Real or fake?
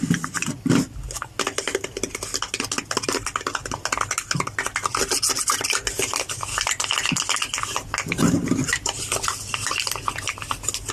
real